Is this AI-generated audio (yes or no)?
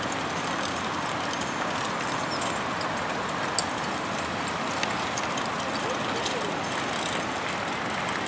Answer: no